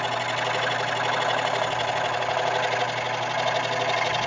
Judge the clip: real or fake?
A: real